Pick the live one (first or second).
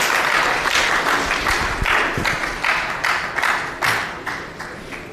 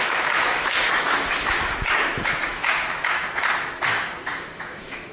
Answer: first